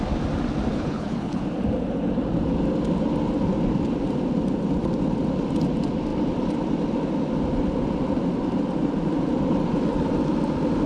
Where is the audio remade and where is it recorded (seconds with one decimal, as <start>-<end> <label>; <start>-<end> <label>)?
0.0-0.7 recorded; 0.7-1.4 remade; 1.4-10.9 recorded